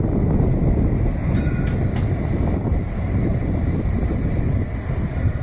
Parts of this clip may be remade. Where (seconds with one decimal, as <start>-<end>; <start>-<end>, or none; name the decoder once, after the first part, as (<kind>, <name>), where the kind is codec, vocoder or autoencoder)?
2.7-5.4 (vocoder, BigVGAN v2)